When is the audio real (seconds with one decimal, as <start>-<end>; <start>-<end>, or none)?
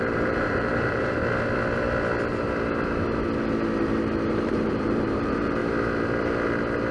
1.2-4.3; 5.6-6.9